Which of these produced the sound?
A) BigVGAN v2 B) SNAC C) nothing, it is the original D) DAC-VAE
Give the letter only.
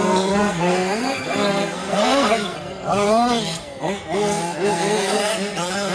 B